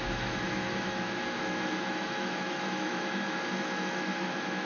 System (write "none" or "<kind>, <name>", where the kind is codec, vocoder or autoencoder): autoencoder, DAC-VAE